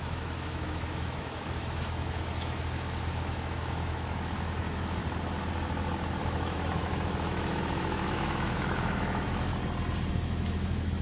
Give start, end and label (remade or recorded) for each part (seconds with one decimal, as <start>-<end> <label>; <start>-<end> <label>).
0.0-5.0 remade; 5.0-6.2 recorded; 6.2-9.5 remade; 9.5-10.1 recorded; 10.1-11.0 remade